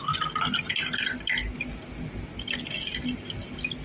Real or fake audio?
real